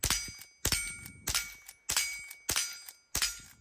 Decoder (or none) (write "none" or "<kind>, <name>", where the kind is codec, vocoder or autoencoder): none